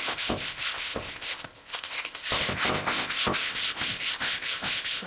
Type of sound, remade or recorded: remade